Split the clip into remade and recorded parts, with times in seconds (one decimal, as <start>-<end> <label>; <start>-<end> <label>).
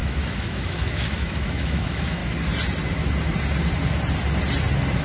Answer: 0.0-2.2 remade; 2.2-5.0 recorded